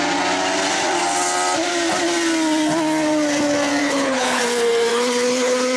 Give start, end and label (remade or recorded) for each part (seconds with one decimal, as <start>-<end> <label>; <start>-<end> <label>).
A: 0.0-3.8 recorded; 3.8-4.4 remade; 4.4-4.9 recorded; 4.9-5.8 remade